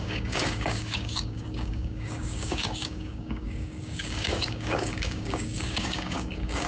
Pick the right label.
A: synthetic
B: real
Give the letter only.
A